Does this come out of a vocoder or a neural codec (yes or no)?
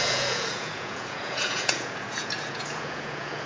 yes